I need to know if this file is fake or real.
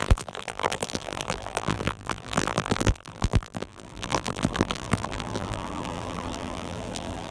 fake